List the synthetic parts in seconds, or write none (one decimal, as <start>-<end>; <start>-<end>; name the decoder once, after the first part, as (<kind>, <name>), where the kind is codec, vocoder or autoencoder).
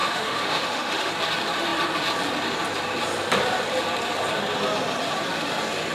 0.0-1.1 (autoencoder, DAC-VAE)